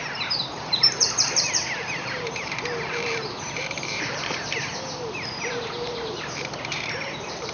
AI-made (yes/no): yes